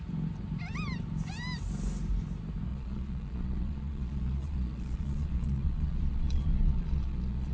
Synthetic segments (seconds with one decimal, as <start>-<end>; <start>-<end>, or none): 2.7-7.5